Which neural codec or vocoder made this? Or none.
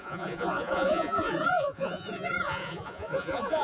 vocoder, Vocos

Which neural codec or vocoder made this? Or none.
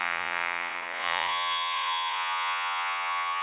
vocoder, Vocos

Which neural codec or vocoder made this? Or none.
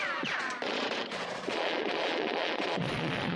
vocoder, Vocos